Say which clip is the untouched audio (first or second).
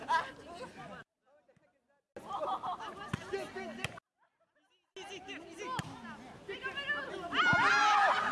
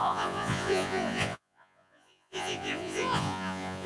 first